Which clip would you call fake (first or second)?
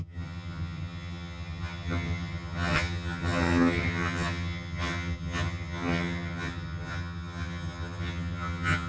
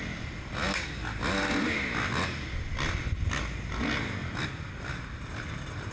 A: first